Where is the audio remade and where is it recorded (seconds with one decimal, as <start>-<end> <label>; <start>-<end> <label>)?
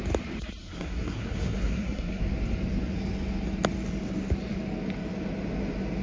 0.0-0.6 recorded; 0.6-2.2 remade; 2.2-6.0 recorded